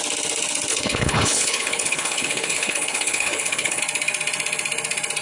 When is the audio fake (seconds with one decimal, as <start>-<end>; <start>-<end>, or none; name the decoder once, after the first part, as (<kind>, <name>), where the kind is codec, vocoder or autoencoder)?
0.7-3.8 (codec, HILCodec)